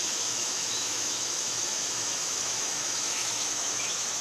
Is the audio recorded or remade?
remade